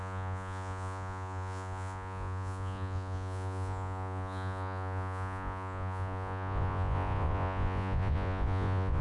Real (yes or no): no